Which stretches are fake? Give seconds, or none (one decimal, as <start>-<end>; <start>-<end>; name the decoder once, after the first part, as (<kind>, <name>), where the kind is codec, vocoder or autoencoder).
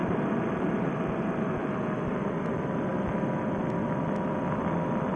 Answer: 0.0-1.5 (vocoder, BigVGAN v2)